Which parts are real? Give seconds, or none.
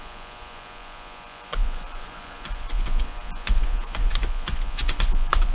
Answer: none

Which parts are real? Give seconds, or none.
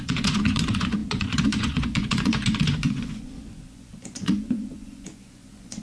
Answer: none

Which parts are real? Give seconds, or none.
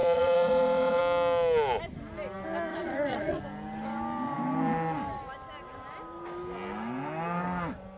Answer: 1.0-2.7; 3.4-8.0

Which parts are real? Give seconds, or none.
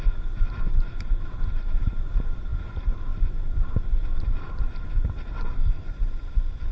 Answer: 0.0-6.7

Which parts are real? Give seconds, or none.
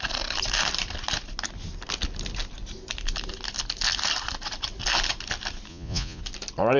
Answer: 0.0-5.7; 6.2-6.8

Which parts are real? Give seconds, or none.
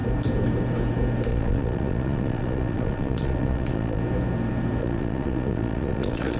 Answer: 0.0-1.3; 4.0-4.8